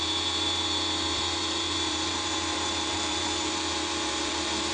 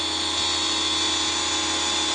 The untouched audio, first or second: second